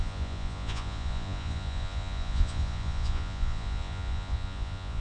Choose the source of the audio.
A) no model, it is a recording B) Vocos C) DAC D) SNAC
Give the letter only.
B